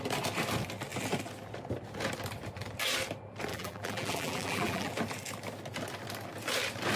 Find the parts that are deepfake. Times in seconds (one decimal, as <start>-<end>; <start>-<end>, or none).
3.5-4.9